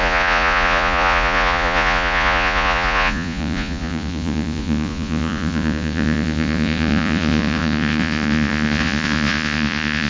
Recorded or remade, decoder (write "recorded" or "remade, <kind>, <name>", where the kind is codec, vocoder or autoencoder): remade, vocoder, Vocos